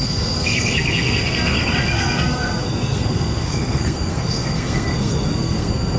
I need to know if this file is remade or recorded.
remade